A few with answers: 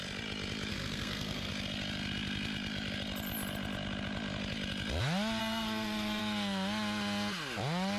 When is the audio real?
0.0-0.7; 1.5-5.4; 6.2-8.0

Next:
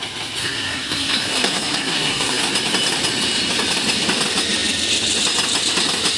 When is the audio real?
0.0-0.4; 2.4-6.2

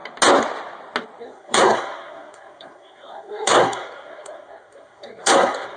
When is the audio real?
0.0-1.2